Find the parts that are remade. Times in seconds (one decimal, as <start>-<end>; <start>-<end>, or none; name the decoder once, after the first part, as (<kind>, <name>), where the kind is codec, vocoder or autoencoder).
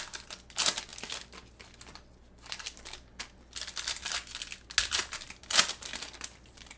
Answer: none